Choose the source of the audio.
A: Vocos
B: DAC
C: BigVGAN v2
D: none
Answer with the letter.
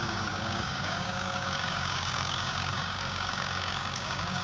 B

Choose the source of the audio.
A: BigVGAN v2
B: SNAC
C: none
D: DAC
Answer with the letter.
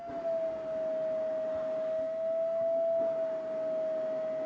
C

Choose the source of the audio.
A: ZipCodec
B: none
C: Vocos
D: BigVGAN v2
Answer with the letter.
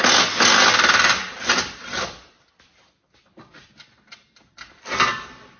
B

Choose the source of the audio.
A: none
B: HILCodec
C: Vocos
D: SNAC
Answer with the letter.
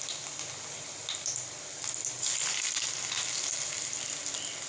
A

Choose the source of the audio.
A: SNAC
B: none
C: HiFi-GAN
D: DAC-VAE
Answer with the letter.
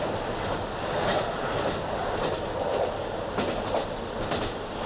B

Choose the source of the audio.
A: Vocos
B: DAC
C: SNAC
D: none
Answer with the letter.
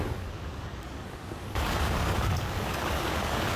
B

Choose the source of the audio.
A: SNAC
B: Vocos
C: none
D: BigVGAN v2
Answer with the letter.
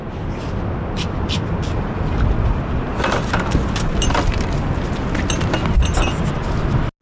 C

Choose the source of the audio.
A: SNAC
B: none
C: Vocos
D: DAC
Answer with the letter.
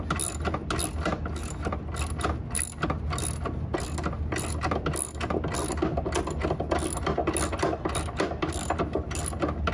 B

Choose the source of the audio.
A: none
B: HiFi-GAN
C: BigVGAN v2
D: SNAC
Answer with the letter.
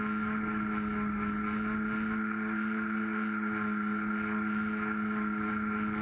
A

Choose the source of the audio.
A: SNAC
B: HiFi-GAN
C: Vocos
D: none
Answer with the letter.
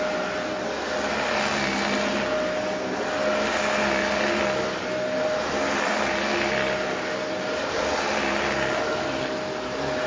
D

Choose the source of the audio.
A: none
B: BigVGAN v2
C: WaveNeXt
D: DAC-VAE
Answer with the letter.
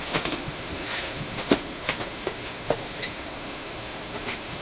D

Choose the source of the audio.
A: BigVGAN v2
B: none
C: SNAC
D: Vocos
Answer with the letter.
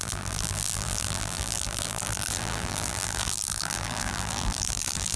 A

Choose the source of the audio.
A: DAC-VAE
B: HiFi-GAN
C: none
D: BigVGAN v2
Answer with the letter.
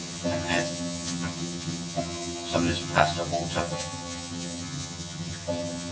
B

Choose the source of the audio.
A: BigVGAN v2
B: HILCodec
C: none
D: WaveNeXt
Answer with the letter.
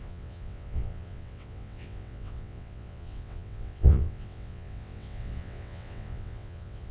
D